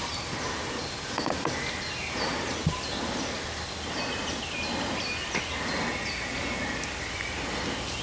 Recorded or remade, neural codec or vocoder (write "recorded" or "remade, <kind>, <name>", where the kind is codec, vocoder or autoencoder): recorded